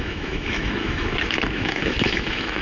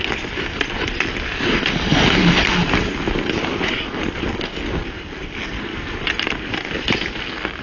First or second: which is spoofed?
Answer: first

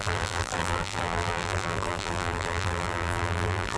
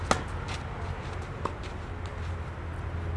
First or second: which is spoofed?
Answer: first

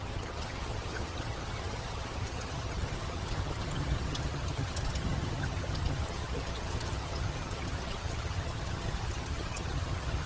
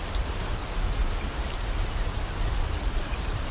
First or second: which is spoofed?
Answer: first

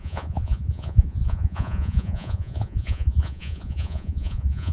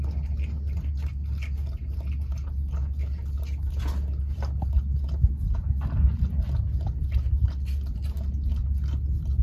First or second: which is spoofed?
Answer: first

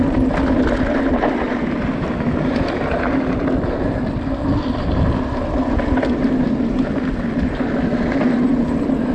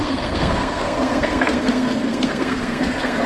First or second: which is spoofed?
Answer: second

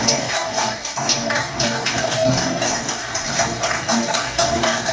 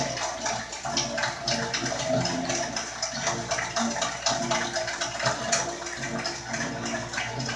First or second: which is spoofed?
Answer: first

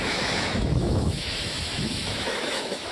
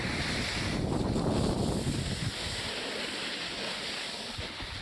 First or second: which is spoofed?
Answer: first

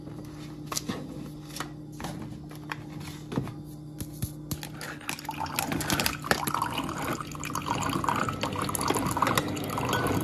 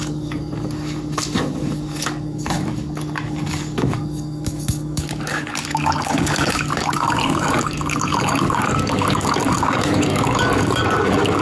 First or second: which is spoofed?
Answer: second